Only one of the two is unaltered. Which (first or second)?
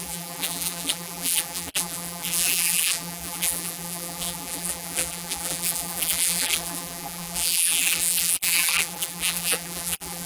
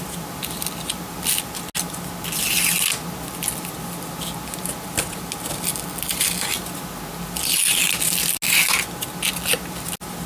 second